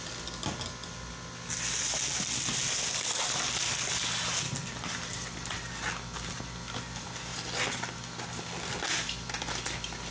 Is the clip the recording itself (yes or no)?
yes